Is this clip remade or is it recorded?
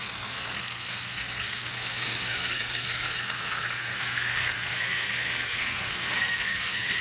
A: remade